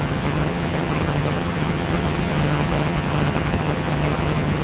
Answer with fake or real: fake